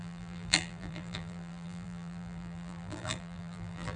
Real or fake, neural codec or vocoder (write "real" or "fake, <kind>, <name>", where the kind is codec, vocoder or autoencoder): fake, vocoder, BigVGAN v2